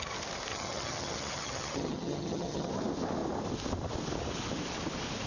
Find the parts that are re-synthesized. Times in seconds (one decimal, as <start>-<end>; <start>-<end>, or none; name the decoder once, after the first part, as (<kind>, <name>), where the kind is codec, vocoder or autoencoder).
0.5-2.7 (vocoder, HiFi-GAN)